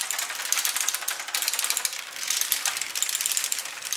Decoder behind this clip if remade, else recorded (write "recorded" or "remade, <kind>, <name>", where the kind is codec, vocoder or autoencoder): recorded